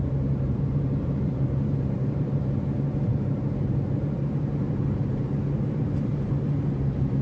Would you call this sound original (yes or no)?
no